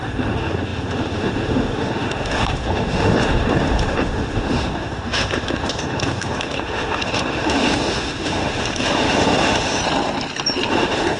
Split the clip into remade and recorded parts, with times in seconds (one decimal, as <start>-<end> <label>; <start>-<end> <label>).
0.0-9.8 remade; 9.8-10.7 recorded; 10.7-11.2 remade